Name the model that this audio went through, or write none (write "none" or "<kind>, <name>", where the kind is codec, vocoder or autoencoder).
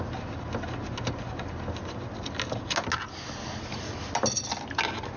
none